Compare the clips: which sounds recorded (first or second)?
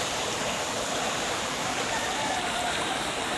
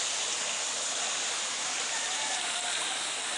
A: second